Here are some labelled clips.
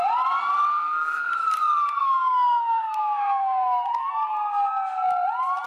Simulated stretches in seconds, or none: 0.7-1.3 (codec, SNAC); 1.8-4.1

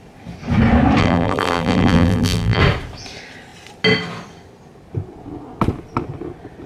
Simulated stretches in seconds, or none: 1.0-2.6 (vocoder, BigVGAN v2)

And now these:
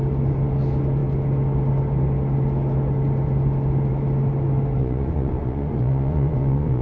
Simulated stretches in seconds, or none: 4.8-6.8 (vocoder, Vocos)

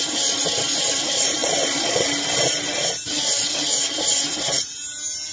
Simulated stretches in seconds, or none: 1.4-2.0 (vocoder, Vocos)

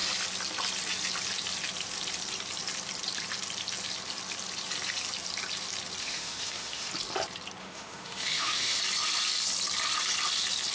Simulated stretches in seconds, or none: 6.0-6.9 (autoencoder, DAC-VAE); 7.6-8.8